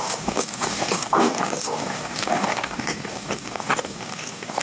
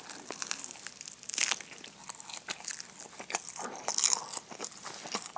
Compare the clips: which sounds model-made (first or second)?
first